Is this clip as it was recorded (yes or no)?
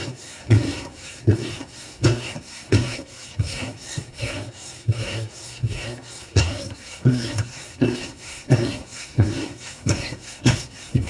no